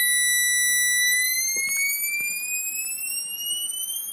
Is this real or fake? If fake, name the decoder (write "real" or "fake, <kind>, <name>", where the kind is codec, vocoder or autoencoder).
real